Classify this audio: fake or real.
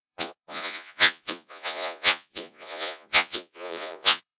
fake